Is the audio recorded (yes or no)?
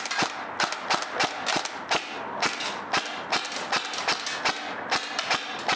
yes